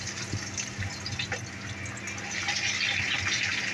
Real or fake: real